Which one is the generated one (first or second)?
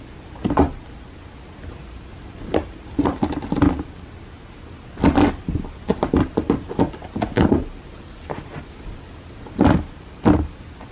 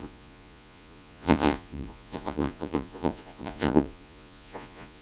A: second